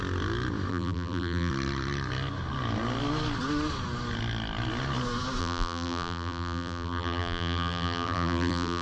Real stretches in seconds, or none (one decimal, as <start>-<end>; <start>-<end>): 0.0-0.7; 1.5-5.4